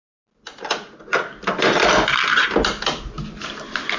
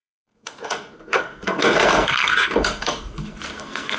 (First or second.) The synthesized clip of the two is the second